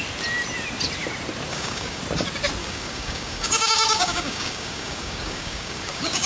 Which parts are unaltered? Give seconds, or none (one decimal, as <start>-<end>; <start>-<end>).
0.0-1.5; 2.0-2.6